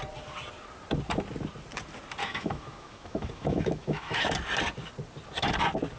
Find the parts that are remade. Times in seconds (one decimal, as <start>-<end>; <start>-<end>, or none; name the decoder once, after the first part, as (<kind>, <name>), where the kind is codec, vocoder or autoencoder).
2.2-4.3 (autoencoder, DAC-VAE)